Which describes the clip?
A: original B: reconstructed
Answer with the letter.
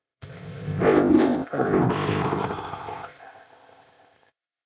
B